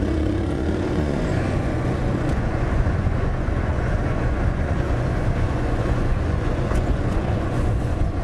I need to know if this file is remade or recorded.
remade